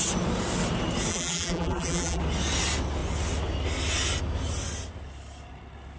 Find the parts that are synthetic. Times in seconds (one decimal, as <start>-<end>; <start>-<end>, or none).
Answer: 1.1-2.2